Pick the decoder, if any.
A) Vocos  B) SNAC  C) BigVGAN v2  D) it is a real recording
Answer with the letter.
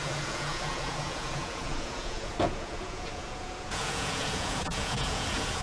A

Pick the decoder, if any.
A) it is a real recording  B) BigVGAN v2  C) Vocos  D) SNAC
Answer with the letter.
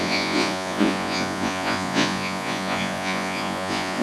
C